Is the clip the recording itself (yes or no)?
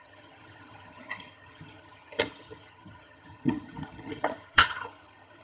no